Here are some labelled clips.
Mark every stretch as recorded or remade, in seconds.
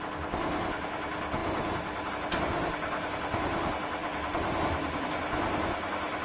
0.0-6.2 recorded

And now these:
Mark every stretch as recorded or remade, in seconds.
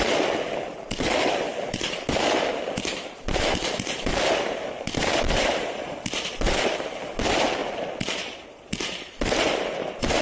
0.0-7.6 remade; 7.6-8.1 recorded; 8.1-10.2 remade